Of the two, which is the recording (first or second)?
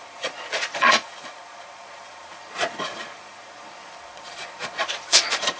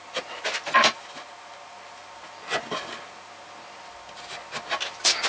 second